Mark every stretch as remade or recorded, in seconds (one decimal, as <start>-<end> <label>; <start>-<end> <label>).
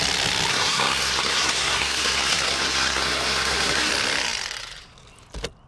0.0-0.5 recorded; 0.5-3.9 remade; 3.9-5.7 recorded